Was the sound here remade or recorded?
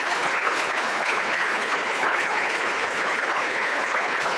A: remade